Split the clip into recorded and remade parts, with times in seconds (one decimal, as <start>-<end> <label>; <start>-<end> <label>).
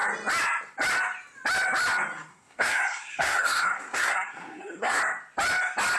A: 0.0-2.3 recorded; 2.3-5.0 remade; 5.0-6.0 recorded